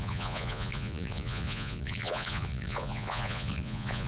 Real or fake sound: fake